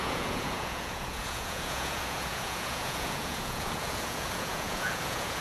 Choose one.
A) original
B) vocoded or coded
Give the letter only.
B